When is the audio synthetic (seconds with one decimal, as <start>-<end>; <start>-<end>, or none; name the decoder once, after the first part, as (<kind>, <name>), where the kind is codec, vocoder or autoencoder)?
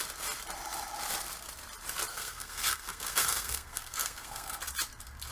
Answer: 2.1-4.6 (codec, SNAC)